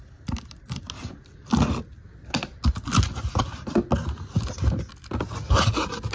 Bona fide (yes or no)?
yes